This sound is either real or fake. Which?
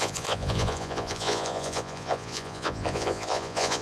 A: fake